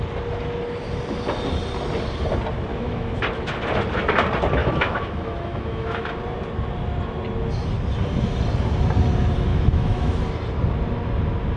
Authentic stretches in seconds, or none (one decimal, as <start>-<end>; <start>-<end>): 0.0-2.7; 3.2-4.6; 6.2-9.5; 10.2-11.6